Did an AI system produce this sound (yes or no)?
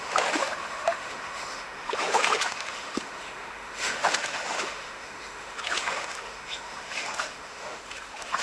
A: yes